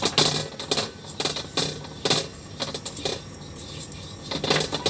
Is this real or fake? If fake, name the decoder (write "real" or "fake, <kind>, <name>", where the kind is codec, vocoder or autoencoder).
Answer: real